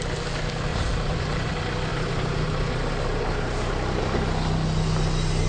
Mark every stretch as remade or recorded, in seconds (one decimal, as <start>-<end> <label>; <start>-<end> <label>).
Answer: 0.0-0.7 recorded; 0.7-1.5 remade; 1.5-1.9 recorded; 1.9-4.0 remade; 4.0-5.5 recorded